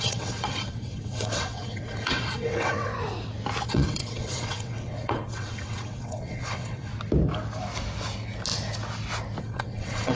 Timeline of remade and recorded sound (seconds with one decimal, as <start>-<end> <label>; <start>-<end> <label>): 0.0-2.9 remade; 2.9-3.6 recorded; 3.6-6.9 remade; 6.9-9.4 recorded; 9.4-10.2 remade